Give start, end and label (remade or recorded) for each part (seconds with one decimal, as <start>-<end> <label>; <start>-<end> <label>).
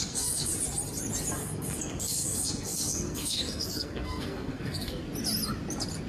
0.0-0.5 remade; 0.5-1.4 recorded; 1.4-5.0 remade; 5.0-6.1 recorded